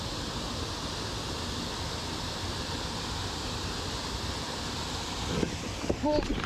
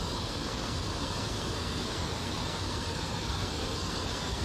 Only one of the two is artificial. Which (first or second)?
second